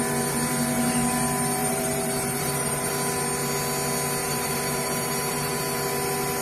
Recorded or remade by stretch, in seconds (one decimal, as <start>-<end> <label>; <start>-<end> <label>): 0.0-1.6 recorded; 1.6-2.9 remade; 2.9-4.2 recorded; 4.2-5.6 remade; 5.6-6.4 recorded